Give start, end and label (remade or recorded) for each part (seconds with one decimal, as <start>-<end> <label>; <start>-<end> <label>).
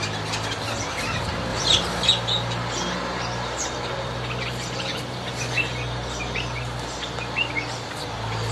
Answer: 0.0-1.5 recorded; 1.5-2.1 remade; 2.1-8.5 recorded